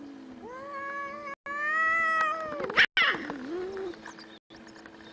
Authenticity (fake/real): real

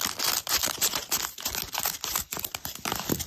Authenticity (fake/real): real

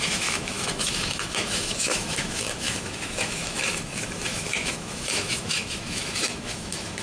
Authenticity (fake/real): fake